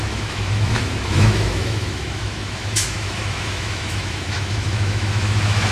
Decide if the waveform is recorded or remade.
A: remade